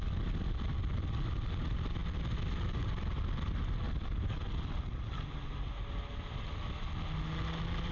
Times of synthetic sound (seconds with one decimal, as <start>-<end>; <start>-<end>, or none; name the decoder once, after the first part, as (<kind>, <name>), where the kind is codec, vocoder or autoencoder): none